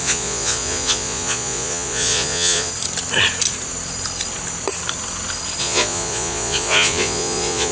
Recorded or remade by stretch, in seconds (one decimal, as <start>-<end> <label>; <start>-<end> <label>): 0.0-2.7 remade; 2.7-5.6 recorded; 5.6-7.7 remade